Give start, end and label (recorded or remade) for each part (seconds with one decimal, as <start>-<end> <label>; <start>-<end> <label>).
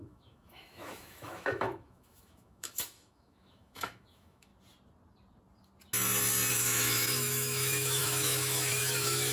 0.0-4.5 remade; 4.5-6.5 recorded; 6.5-9.3 remade